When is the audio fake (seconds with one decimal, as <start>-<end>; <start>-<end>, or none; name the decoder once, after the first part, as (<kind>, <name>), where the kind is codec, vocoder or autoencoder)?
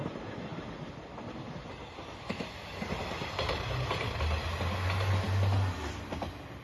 none